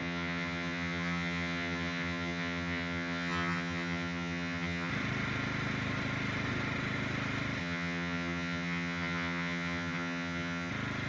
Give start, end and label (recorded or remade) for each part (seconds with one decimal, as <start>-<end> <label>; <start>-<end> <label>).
0.0-4.9 remade; 4.9-7.6 recorded; 7.6-10.7 remade; 10.7-11.1 recorded